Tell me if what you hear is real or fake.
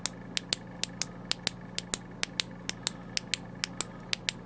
real